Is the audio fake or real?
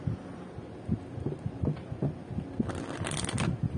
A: real